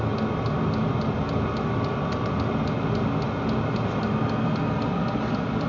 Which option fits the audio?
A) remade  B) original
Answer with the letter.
B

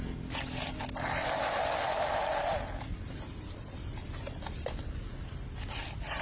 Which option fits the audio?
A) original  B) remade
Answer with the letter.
A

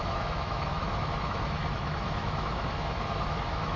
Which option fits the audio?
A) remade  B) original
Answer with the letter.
A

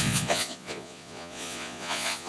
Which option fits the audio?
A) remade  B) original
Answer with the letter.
A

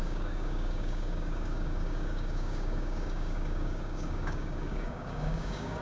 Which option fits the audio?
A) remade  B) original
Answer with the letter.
A